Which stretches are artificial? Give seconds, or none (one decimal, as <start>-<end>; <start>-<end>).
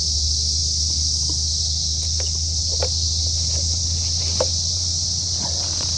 none